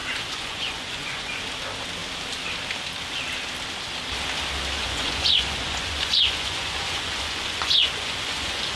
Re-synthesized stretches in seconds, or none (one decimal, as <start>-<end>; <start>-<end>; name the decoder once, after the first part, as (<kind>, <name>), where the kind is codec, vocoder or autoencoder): 0.0-1.4 (vocoder, Vocos); 4.8-8.8